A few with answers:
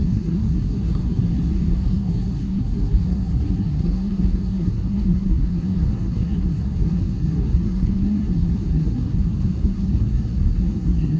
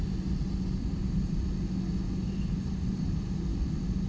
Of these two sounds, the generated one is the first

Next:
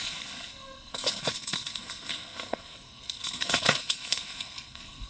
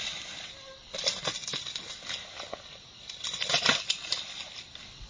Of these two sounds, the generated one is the first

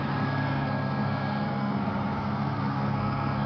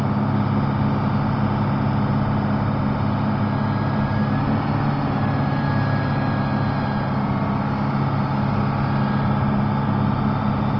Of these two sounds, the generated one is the first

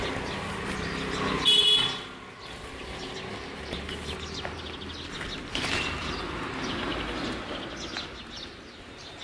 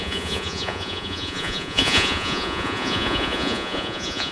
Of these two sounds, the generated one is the second